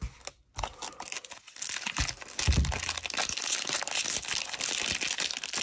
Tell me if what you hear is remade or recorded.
recorded